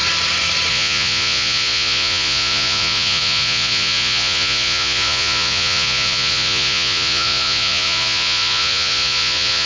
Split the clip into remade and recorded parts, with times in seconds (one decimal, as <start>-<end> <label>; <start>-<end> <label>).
0.0-0.7 recorded; 0.7-9.7 remade